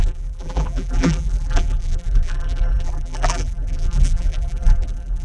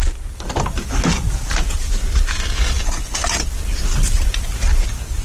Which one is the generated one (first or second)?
first